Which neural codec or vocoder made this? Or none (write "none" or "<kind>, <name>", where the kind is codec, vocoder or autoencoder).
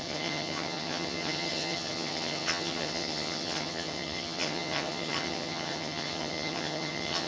vocoder, HiFi-GAN